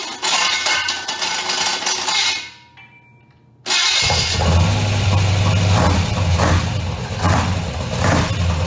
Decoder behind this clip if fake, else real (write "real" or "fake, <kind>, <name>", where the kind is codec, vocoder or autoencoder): real